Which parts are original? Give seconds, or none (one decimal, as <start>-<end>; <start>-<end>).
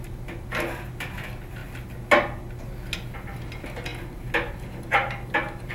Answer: 0.0-5.7